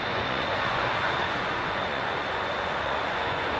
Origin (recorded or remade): remade